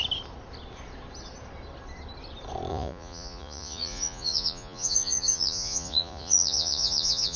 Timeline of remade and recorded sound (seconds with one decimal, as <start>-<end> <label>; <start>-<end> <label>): 0.0-2.7 recorded; 2.7-7.4 remade